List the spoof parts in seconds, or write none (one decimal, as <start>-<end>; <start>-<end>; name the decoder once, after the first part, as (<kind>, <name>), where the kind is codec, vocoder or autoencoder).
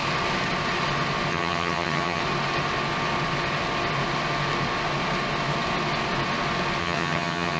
1.3-2.2 (vocoder, HiFi-GAN); 6.8-7.6